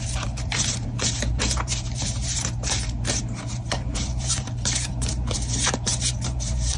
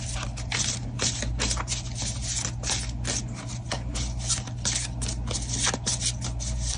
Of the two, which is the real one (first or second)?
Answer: second